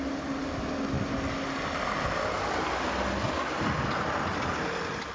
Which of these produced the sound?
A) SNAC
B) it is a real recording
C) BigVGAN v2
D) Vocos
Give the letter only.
B